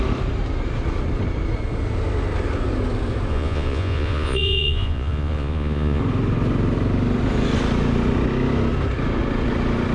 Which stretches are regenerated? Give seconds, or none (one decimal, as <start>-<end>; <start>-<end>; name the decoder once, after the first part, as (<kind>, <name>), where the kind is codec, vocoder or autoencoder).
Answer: 3.3-6.0 (vocoder, Vocos)